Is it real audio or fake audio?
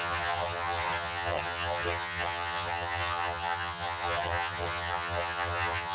fake